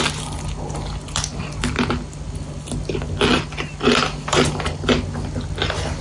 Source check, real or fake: real